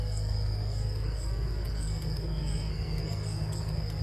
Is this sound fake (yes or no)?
yes